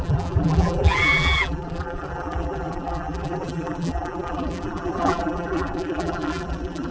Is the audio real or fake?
fake